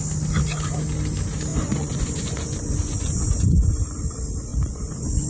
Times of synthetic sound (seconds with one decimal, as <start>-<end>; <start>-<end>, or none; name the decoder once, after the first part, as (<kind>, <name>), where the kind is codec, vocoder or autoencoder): 1.5-3.7 (vocoder, Vocos); 4.5-5.3